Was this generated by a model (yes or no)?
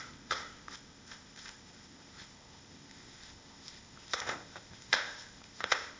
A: yes